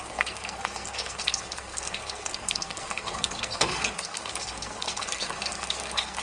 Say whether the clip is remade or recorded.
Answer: remade